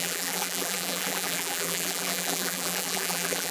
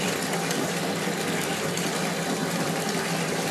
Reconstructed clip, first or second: first